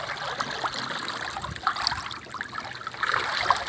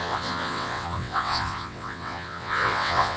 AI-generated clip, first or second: second